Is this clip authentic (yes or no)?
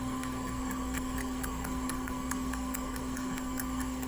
no